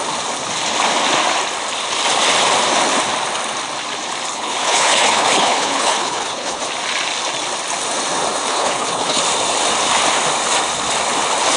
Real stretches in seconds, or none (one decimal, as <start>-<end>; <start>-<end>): 0.0-4.3; 6.6-8.5; 9.2-11.6